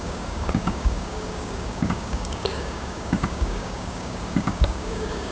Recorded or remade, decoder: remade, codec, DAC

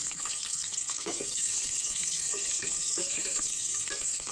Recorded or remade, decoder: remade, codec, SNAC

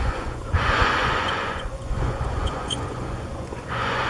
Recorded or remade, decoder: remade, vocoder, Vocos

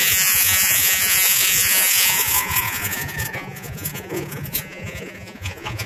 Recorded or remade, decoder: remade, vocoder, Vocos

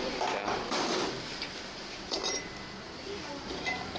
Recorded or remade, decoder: recorded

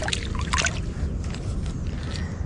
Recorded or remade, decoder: recorded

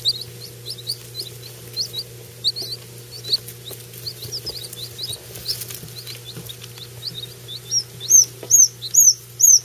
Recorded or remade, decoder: recorded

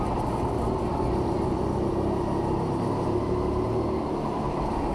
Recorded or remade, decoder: recorded